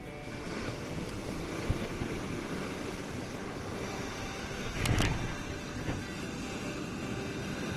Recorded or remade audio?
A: recorded